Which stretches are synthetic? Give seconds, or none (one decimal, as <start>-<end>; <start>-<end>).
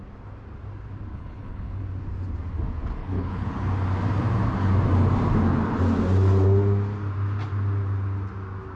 1.1-1.8; 3.0-3.5